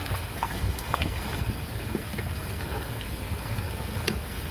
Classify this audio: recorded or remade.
remade